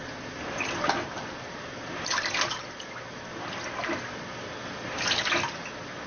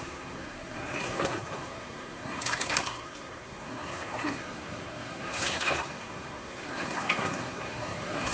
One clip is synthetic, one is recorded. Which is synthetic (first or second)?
second